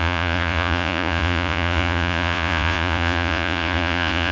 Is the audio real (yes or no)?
no